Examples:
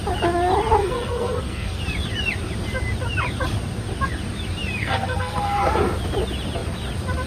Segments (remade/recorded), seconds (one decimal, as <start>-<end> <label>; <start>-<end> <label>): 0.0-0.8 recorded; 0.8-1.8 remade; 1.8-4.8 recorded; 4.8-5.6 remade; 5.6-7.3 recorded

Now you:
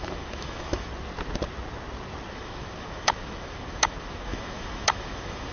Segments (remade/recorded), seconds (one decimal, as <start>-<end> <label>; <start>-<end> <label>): 0.0-0.9 remade; 0.9-2.3 recorded; 2.3-5.5 remade

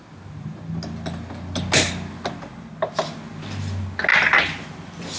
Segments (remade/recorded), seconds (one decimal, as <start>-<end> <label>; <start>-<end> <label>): 0.0-5.2 recorded

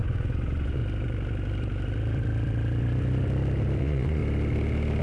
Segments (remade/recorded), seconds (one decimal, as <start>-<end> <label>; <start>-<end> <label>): 0.0-0.8 remade; 0.8-3.8 recorded; 3.8-4.2 remade; 4.2-5.0 recorded

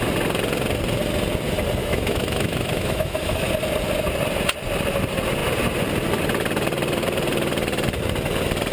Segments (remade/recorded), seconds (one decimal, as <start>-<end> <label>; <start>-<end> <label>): 0.0-1.8 recorded; 1.8-3.5 remade; 3.5-8.7 recorded

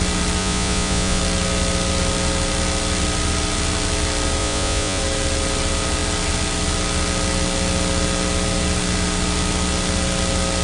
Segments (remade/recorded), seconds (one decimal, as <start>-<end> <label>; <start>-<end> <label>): 0.0-0.4 recorded; 0.4-1.2 remade; 1.2-4.4 recorded; 4.4-5.0 remade; 5.0-10.6 recorded